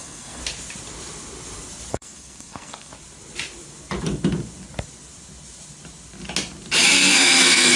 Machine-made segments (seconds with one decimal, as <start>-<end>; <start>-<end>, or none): 0.0-0.4; 1.9-2.9; 7.1-7.8